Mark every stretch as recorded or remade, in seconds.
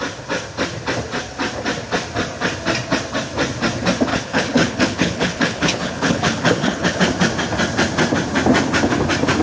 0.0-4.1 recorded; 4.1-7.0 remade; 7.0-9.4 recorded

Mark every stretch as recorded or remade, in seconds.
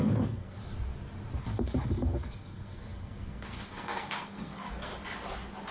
0.0-0.6 remade; 0.6-1.4 recorded; 1.4-4.9 remade; 4.9-5.7 recorded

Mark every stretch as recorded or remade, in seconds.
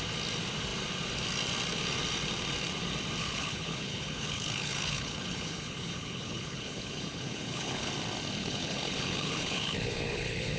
0.0-3.2 recorded; 3.2-7.9 remade; 7.9-8.4 recorded; 8.4-10.6 remade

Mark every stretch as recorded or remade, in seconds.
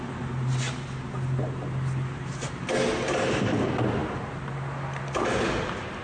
0.0-6.0 recorded